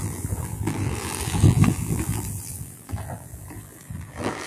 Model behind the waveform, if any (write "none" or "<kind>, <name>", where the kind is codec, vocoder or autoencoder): vocoder, BigVGAN v2